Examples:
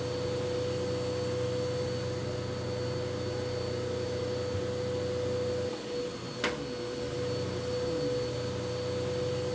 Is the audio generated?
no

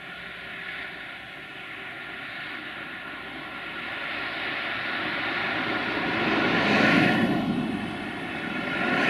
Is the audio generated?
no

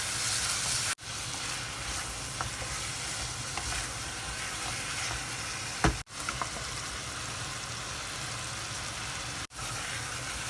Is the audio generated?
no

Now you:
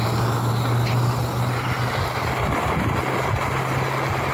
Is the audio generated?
no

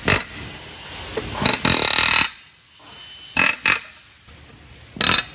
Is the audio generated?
no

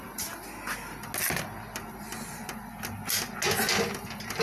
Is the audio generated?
no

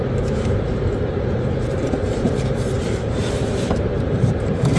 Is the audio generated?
yes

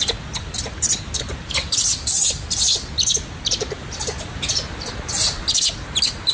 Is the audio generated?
no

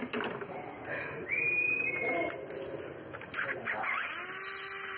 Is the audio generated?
no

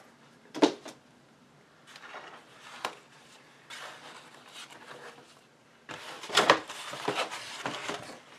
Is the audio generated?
yes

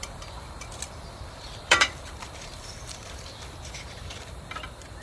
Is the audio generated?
yes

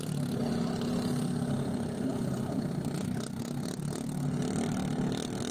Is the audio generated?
no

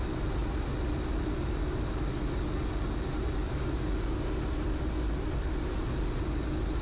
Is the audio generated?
no